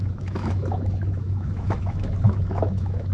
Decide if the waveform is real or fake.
fake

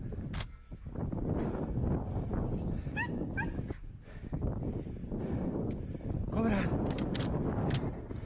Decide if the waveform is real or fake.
real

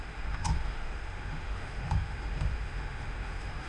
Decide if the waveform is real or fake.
fake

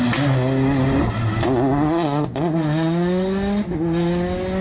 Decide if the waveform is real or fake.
real